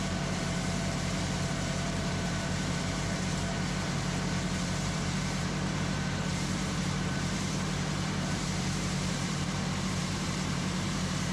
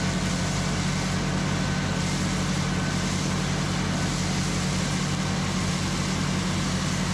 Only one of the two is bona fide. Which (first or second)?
second